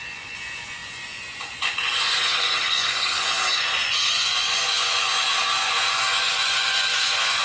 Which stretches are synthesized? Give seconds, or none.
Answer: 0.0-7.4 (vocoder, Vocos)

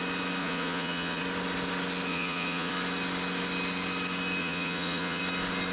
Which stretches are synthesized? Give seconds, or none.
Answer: 0.4-1.2 (vocoder, Vocos); 2.1-2.7; 4.4-5.2

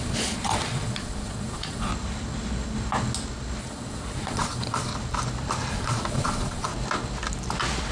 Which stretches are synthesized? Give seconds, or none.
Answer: 0.0-1.9 (vocoder, Vocos); 3.6-4.9; 5.7-6.7

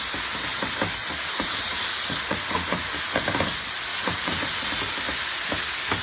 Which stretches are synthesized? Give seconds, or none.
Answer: 1.0-3.2 (vocoder, Vocos); 3.9-4.8